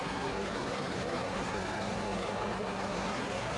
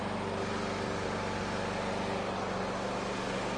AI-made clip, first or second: first